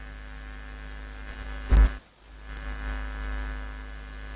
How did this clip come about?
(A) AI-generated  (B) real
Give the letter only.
B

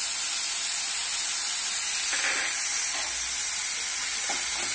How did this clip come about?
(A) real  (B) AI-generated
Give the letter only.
A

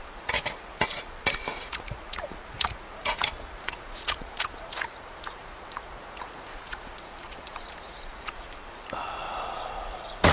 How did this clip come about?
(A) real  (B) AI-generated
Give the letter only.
B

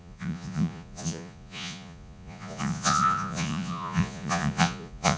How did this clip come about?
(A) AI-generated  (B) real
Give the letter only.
A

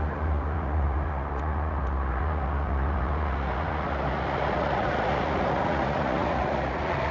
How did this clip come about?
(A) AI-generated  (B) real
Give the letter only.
A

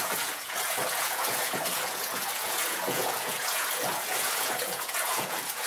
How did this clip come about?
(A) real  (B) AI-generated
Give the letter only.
B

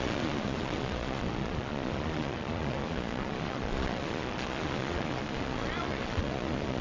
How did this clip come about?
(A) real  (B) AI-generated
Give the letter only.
B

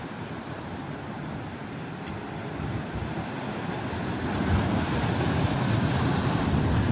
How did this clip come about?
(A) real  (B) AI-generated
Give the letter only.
A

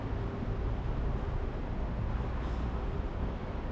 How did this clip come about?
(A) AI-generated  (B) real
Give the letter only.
B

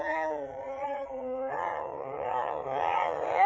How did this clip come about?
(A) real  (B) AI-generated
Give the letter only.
B